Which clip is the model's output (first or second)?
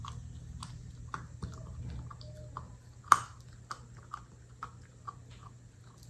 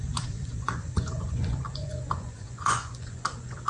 second